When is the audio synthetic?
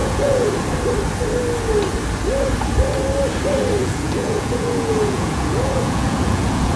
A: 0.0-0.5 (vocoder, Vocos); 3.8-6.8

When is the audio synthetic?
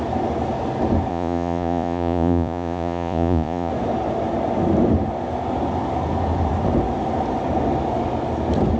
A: 1.1-3.7 (vocoder, Vocos)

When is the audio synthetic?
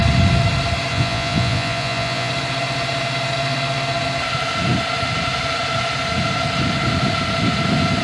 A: 0.9-2.3 (vocoder, Vocos)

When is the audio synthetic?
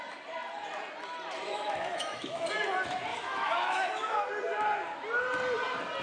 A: 1.5-2.5 (autoencoder, DAC-VAE); 3.1-4.3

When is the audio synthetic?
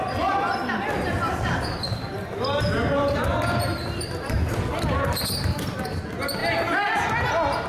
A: none